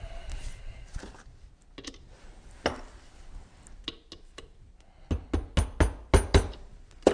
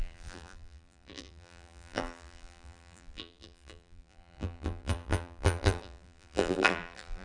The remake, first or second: second